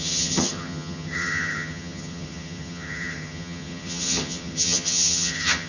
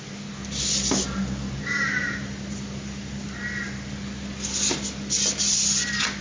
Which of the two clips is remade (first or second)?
first